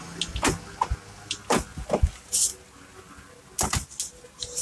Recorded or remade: recorded